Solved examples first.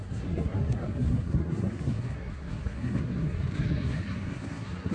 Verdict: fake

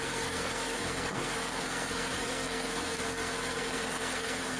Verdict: fake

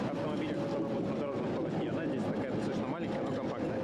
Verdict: real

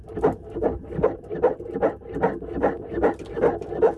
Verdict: real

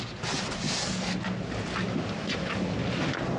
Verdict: real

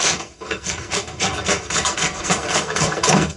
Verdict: fake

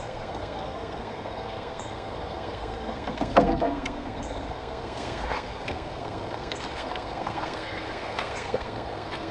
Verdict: fake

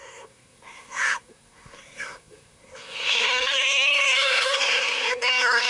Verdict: fake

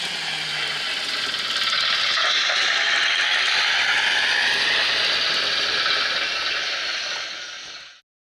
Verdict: real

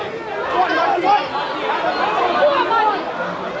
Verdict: real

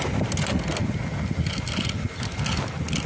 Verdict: real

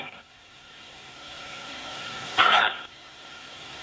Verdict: fake